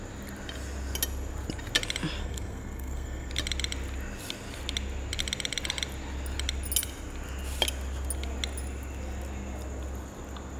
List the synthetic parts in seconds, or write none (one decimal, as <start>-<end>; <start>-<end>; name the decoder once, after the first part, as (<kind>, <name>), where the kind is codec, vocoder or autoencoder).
2.2-3.3 (codec, SNAC)